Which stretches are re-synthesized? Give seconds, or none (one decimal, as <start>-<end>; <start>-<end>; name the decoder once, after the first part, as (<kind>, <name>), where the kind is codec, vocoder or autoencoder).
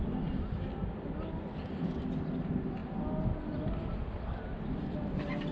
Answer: none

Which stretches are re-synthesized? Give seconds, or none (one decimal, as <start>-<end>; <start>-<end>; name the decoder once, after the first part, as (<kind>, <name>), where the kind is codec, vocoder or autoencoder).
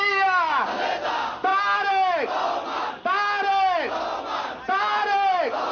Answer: none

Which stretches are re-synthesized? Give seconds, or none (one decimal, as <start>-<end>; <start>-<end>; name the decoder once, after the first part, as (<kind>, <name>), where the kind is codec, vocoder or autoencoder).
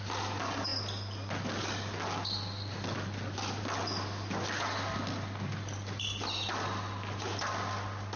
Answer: none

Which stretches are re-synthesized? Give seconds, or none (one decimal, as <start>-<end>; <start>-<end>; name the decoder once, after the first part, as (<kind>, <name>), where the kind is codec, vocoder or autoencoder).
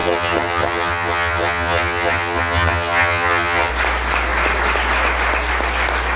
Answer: 0.0-3.7 (vocoder, HiFi-GAN)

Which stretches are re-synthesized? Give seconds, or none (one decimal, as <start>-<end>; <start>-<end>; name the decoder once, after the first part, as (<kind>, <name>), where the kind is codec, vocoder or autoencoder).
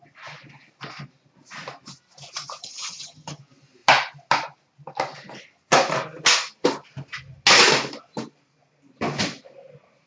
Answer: 2.6-3.4 (vocoder, HiFi-GAN)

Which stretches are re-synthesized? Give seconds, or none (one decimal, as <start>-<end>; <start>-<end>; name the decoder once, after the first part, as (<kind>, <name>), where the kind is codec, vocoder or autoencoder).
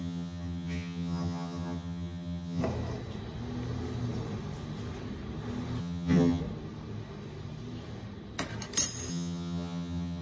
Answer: 0.0-2.6 (vocoder, HiFi-GAN); 5.8-6.4; 9.1-10.2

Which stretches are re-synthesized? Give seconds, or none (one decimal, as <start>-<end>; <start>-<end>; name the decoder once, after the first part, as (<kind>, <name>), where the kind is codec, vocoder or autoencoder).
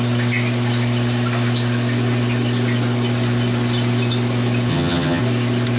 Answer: 4.7-5.2 (vocoder, HiFi-GAN)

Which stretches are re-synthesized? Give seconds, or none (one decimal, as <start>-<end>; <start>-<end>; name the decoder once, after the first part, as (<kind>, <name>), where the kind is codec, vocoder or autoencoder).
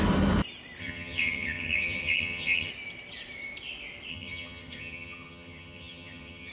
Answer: 0.8-2.7 (vocoder, HiFi-GAN); 4.1-6.5